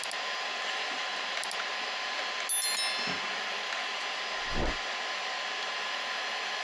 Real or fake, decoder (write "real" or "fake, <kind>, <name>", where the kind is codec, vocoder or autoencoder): real